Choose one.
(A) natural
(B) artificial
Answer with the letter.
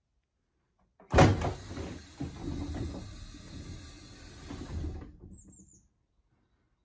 A